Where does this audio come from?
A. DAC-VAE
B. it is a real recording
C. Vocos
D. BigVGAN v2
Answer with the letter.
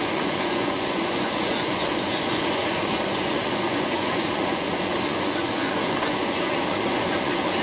C